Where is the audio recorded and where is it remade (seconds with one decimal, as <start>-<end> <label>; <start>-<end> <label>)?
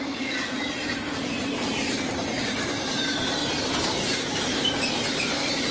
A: 0.0-3.4 remade; 3.4-4.3 recorded; 4.3-5.7 remade